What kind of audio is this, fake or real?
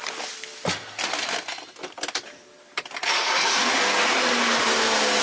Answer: real